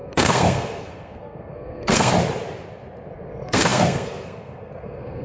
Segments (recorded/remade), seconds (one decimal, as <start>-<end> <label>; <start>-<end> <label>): 0.0-2.1 remade; 2.1-3.3 recorded; 3.3-5.2 remade